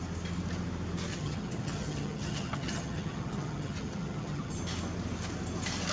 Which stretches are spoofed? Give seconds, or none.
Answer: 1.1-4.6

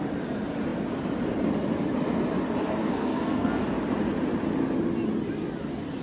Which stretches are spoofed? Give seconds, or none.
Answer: 2.8-3.6

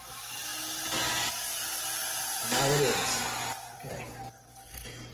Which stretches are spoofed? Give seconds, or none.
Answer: none

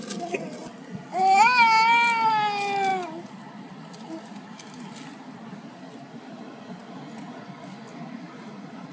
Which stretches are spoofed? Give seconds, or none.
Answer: none

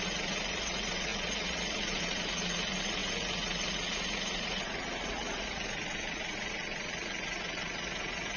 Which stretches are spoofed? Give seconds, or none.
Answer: 0.0-8.4

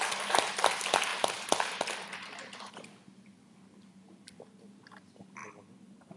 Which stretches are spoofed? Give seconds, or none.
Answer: none

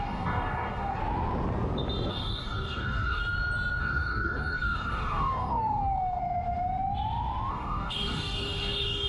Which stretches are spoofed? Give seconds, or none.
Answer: 0.0-1.0; 2.1-3.2; 3.8-6.2; 7.5-9.1